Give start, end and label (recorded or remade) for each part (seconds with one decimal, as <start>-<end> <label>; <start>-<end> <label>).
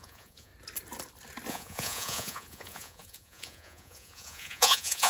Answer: 0.0-0.5 remade; 0.5-1.5 recorded; 1.5-5.1 remade